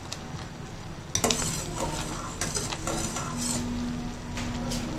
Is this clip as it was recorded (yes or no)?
yes